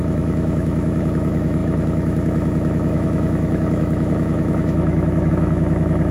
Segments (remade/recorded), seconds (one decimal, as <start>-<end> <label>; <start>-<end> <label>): 0.0-6.1 remade